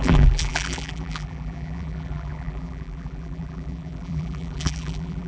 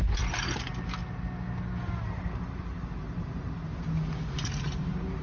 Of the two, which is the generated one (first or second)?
first